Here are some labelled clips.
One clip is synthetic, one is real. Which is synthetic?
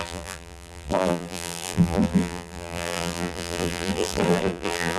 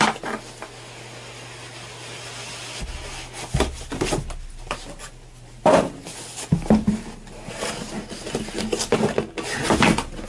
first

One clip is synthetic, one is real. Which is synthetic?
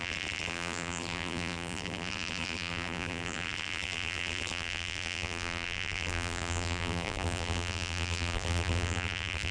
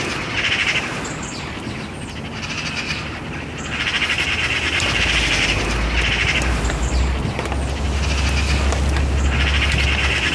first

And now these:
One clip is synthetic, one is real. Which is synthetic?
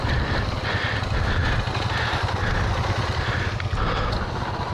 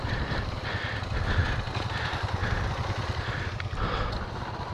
second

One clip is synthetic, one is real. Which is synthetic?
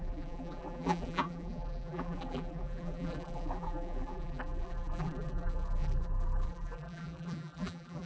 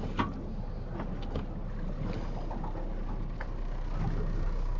first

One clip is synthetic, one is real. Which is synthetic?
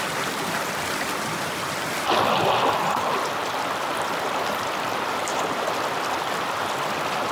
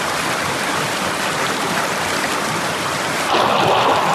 second